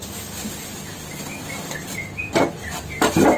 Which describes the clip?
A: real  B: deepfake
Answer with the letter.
A